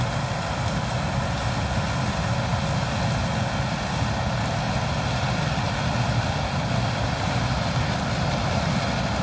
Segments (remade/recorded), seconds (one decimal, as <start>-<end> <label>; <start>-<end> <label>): 0.0-9.2 recorded